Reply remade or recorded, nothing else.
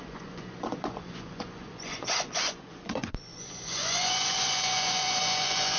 remade